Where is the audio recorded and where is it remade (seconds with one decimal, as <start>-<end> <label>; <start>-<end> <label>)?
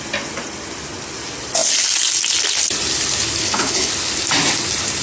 0.0-3.4 recorded; 3.4-3.9 remade; 3.9-5.0 recorded